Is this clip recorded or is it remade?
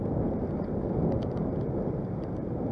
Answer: recorded